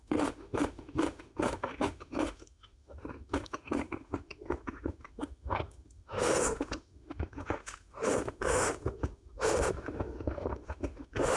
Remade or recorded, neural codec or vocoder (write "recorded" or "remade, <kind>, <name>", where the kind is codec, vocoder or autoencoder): remade, autoencoder, DAC-VAE